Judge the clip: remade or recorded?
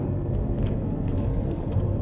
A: remade